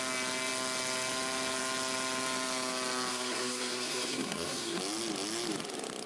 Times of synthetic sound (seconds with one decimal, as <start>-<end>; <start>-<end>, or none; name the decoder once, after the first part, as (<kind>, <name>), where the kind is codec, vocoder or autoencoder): 3.1-4.8 (codec, SNAC)